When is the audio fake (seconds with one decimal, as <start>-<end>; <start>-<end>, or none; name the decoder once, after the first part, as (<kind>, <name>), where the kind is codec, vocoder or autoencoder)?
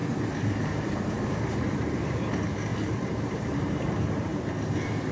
0.0-5.1 (vocoder, BigVGAN v2)